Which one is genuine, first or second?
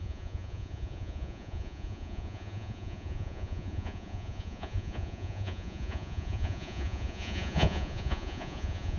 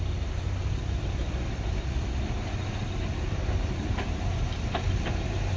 second